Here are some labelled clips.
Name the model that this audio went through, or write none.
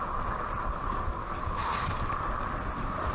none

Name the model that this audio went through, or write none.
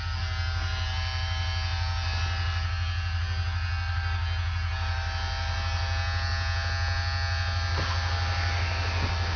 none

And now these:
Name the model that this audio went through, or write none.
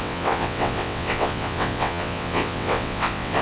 vocoder, WaveNeXt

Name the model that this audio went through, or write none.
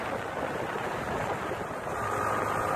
none